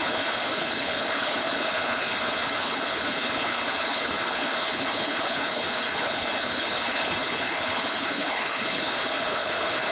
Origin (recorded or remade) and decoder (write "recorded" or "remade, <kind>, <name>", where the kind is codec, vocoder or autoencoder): remade, codec, HILCodec